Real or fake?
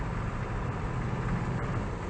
real